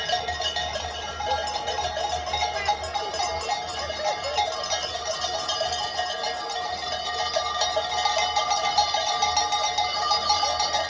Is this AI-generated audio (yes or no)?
no